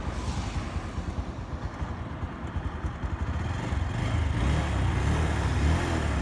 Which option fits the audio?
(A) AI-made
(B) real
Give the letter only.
B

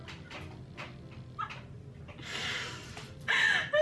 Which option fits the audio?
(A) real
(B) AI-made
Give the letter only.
A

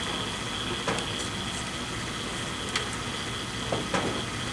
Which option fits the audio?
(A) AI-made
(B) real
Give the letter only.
B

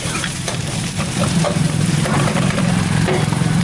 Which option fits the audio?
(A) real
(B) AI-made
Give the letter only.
B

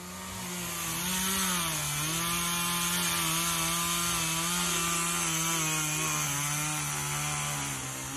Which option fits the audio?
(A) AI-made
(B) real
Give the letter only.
B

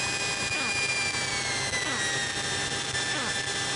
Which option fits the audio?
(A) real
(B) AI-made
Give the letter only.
A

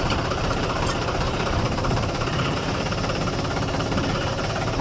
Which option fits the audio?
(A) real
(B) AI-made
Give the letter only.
B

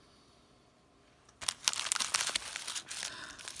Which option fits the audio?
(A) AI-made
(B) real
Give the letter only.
B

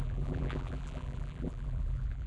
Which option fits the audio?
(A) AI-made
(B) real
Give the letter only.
A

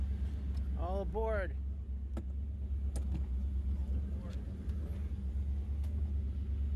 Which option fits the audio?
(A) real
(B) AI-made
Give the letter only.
A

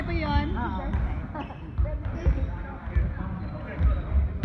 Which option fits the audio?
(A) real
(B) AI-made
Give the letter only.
A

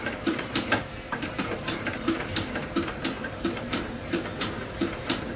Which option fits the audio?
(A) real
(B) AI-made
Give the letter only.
B